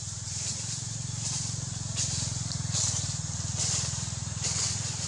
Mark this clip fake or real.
real